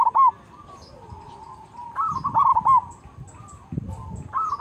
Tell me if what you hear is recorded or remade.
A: recorded